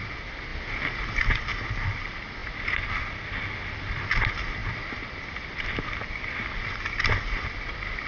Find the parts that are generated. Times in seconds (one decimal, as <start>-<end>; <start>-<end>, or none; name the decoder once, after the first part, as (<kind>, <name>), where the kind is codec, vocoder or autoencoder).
none